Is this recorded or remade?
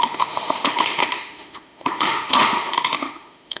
remade